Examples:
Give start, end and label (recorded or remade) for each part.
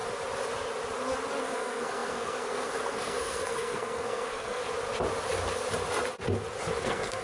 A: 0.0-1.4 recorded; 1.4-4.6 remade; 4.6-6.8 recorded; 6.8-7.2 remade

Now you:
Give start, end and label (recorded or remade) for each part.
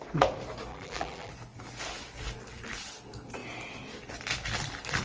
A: 0.0-0.7 recorded; 0.7-1.3 remade; 1.3-5.0 recorded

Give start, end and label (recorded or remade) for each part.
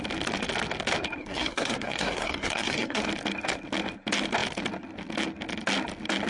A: 0.0-1.2 recorded; 1.2-3.0 remade; 3.0-6.3 recorded